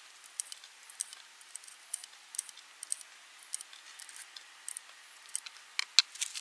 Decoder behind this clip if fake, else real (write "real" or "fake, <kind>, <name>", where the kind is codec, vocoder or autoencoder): real